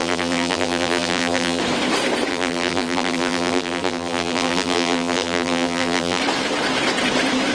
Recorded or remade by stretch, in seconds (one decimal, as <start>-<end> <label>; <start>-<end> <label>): 0.0-1.6 remade; 1.6-2.3 recorded; 2.3-6.2 remade; 6.2-7.5 recorded